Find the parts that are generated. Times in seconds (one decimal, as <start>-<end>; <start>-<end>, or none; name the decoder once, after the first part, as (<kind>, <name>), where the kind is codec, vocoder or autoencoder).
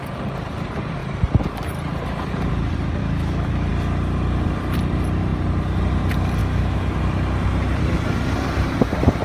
3.0-3.7 (autoencoder, DAC-VAE); 6.4-7.0